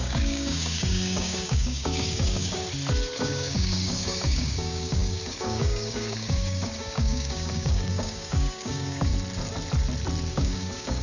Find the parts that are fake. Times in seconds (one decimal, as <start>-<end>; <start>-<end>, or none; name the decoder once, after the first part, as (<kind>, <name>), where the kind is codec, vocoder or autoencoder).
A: 0.0-2.6 (codec, DAC); 3.2-9.1; 10.3-11.0